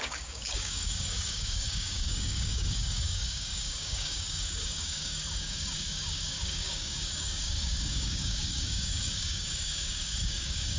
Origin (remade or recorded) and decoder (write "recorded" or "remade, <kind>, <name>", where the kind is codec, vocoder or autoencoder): remade, codec, DAC